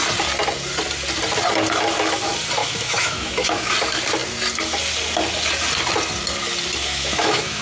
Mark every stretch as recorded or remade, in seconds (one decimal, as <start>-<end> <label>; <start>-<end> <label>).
0.0-2.6 recorded; 2.6-3.7 remade; 3.7-6.8 recorded; 6.8-7.6 remade